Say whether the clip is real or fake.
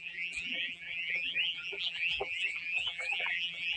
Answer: fake